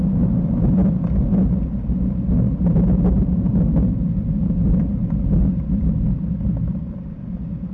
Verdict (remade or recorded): recorded